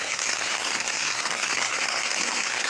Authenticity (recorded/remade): remade